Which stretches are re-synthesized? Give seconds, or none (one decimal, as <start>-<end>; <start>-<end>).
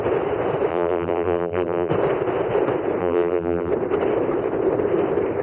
0.7-1.9; 3.0-3.7